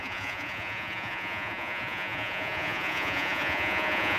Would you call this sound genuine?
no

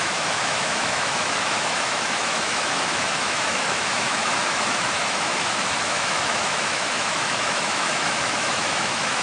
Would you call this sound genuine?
no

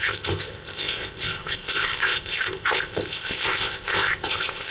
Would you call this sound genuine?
no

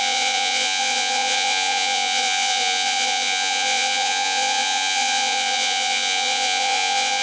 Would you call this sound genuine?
no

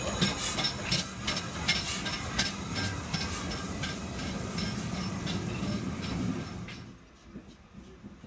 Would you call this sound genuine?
yes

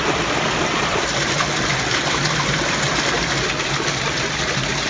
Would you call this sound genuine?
yes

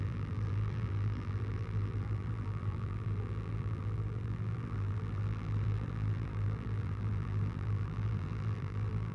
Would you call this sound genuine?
no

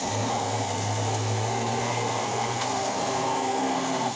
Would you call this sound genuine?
no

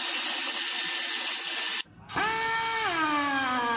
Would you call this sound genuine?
yes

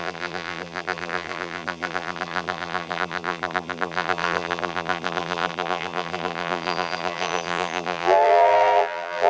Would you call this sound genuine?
no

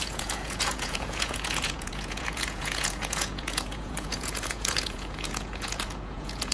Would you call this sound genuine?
no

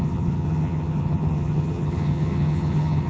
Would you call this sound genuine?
no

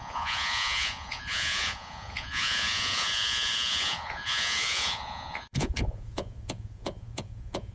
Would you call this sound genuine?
no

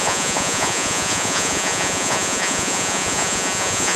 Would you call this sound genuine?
no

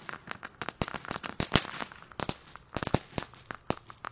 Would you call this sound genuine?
yes